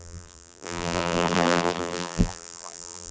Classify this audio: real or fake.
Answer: fake